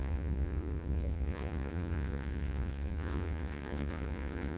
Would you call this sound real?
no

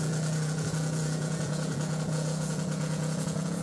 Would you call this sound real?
no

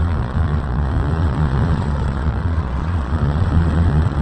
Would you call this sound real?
no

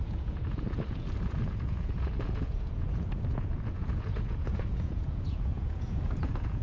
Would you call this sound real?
no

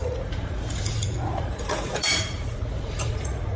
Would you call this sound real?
no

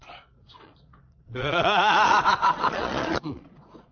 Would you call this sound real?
no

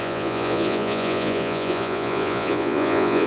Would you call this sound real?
no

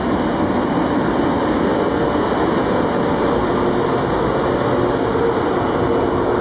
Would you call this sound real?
yes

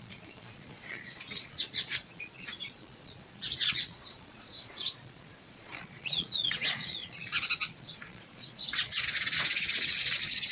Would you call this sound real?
no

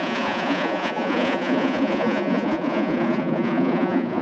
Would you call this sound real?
no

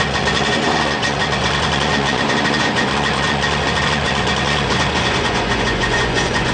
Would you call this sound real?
no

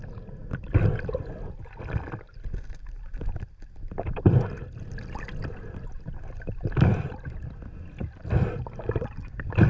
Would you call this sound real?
yes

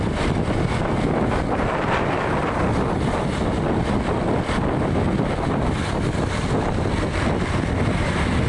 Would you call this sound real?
yes